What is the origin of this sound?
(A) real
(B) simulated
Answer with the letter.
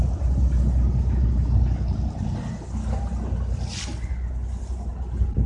A